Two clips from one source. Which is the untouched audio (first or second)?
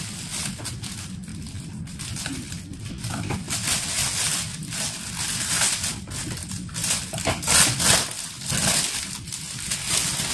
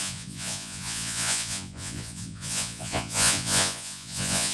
first